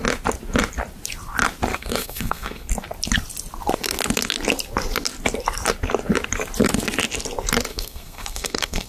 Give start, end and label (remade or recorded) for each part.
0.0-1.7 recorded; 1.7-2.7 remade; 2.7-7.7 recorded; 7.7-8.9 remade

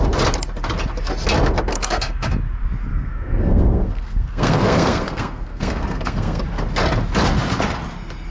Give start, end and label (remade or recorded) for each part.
0.0-1.7 recorded; 1.7-2.3 remade; 2.3-2.9 recorded; 2.9-6.4 remade; 6.4-8.3 recorded

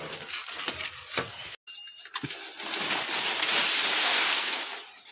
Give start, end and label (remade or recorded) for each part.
0.0-4.0 recorded; 4.0-4.6 remade; 4.6-5.1 recorded

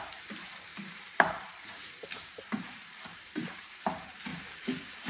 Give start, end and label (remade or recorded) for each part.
0.0-0.7 recorded; 0.7-3.8 remade; 3.8-5.1 recorded

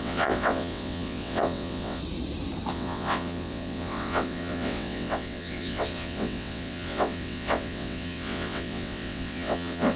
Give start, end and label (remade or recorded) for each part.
0.0-2.0 remade; 2.0-2.7 recorded; 2.7-10.0 remade

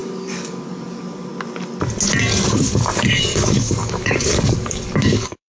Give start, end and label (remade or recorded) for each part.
0.0-1.3 remade; 1.3-2.5 recorded; 2.5-5.5 remade

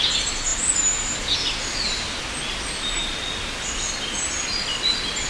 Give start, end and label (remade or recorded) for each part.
0.0-5.3 recorded